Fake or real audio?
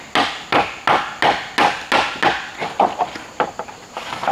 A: real